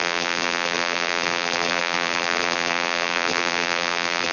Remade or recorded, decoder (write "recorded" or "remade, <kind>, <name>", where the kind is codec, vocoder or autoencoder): remade, vocoder, BigVGAN v2